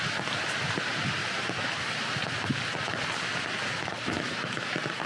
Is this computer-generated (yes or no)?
no